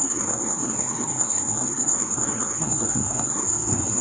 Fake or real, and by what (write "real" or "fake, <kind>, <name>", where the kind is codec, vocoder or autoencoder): fake, codec, SNAC